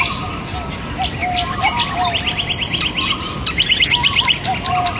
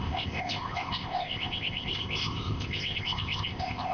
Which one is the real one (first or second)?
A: first